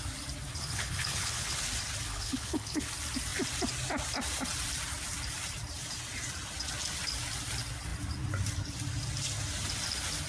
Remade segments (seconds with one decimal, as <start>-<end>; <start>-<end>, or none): 0.5-1.6; 2.1-2.9